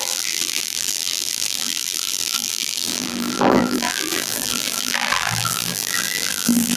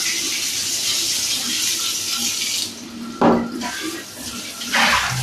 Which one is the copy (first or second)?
first